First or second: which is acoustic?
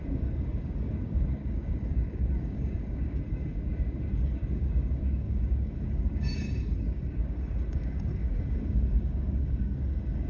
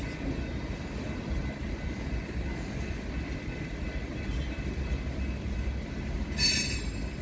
second